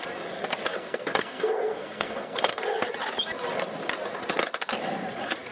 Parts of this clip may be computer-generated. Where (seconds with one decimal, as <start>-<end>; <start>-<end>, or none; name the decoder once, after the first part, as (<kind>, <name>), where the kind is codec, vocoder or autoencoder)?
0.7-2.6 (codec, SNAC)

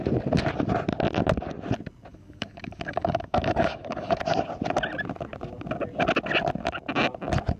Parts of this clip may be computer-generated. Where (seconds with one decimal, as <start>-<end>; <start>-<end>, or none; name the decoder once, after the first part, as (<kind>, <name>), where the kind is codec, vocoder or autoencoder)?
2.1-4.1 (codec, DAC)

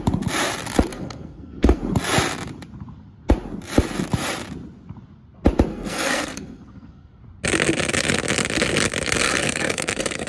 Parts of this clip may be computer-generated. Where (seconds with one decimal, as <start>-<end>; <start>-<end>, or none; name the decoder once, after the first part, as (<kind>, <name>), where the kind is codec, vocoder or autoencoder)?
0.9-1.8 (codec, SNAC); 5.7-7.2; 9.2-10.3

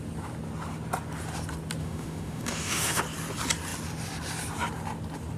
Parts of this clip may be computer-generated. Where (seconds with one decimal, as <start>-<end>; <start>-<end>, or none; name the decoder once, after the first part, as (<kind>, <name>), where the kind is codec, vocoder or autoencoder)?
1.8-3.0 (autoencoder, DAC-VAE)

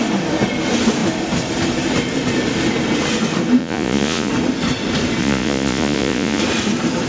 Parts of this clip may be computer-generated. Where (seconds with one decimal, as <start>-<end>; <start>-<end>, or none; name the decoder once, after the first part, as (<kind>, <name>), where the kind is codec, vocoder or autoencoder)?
3.6-4.3 (vocoder, Vocos); 5.2-6.4